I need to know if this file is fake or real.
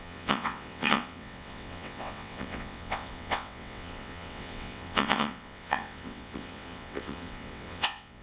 fake